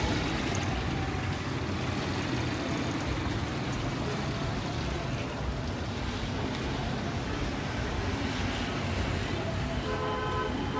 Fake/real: real